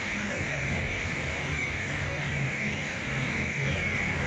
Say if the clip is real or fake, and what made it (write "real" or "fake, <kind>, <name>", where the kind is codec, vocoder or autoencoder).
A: fake, codec, DAC